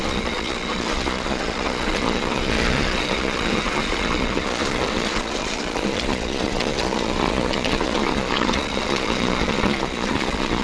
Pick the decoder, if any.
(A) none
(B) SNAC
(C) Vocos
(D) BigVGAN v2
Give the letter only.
C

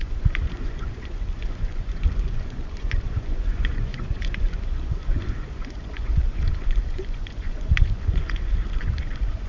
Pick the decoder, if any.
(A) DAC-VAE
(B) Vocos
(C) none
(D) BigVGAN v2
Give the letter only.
B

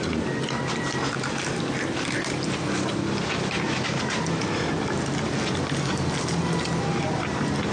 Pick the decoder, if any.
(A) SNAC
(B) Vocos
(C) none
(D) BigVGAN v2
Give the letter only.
C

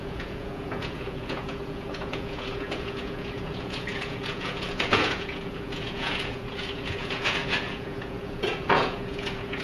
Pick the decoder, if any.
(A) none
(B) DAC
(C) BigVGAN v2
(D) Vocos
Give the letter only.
D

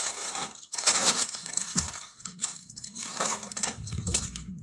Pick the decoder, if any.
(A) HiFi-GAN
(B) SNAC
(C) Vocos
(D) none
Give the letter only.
B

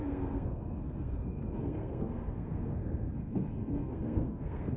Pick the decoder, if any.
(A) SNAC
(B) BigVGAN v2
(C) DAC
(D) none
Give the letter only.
A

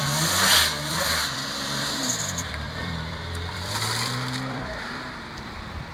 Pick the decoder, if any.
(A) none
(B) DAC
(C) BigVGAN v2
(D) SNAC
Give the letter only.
C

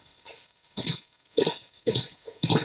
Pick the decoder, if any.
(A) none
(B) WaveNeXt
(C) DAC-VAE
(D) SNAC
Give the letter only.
D